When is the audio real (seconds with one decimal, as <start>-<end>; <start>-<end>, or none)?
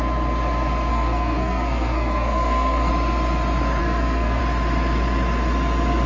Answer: 0.0-0.9; 2.9-3.8; 4.4-6.1